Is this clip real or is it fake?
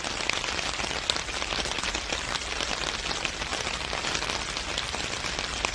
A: real